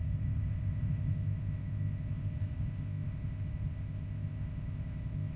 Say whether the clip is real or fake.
fake